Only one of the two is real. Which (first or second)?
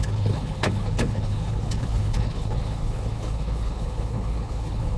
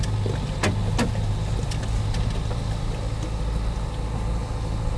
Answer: second